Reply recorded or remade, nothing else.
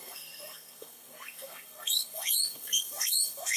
remade